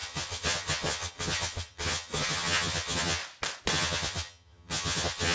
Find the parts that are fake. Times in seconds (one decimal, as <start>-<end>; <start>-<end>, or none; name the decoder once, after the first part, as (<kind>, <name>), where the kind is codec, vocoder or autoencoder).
0.0-3.2 (vocoder, HiFi-GAN); 3.7-5.3